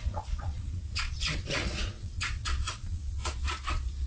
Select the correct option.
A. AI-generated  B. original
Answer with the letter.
A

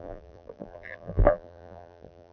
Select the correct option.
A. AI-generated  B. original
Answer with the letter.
A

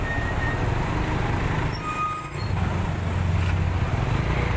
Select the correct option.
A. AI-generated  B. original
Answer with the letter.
B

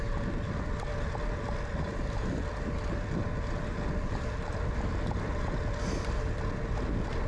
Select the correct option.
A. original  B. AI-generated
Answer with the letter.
A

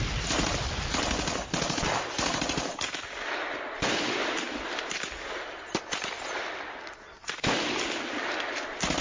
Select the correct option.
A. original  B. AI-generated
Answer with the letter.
A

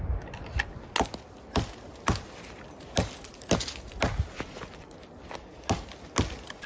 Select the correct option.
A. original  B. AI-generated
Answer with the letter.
A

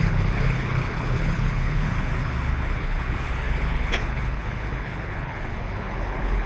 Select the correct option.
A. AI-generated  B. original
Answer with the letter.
A